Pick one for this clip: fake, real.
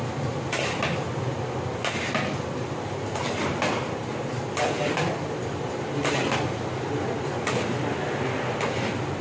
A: real